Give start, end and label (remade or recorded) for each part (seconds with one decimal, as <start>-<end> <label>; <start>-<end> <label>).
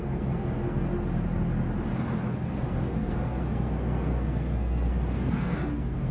0.0-0.9 remade; 0.9-2.3 recorded; 2.3-6.1 remade